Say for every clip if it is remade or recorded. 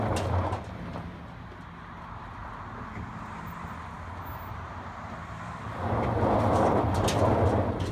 recorded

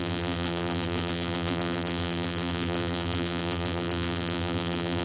remade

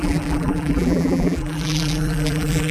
remade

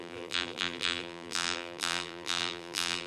remade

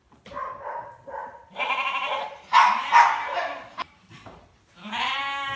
remade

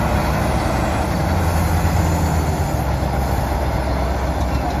recorded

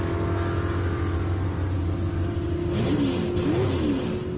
recorded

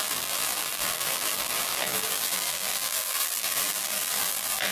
remade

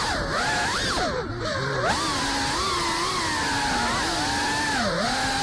recorded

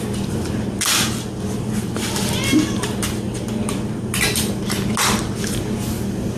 recorded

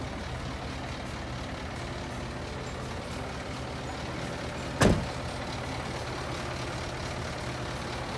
recorded